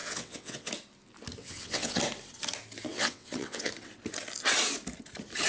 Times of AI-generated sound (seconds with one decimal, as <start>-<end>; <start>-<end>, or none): 0.0-0.7; 1.4-2.0; 2.9-3.7